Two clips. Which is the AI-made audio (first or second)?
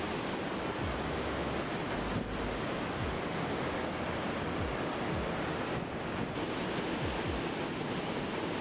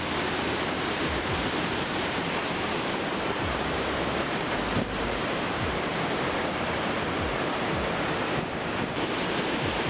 second